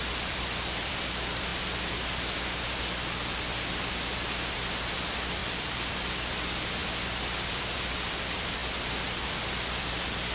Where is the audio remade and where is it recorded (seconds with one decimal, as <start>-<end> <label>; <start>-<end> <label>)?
0.0-1.5 remade; 1.5-4.9 recorded; 4.9-6.8 remade; 6.8-7.5 recorded; 7.5-10.3 remade